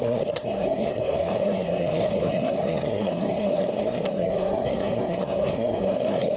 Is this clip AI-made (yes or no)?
yes